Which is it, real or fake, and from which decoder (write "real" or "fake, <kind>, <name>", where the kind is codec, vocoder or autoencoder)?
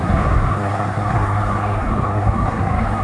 fake, codec, SNAC